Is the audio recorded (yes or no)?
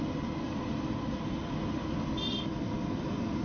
yes